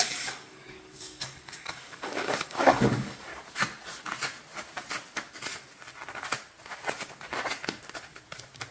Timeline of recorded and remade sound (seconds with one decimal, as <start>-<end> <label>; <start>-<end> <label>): 0.0-3.3 remade; 3.3-8.7 recorded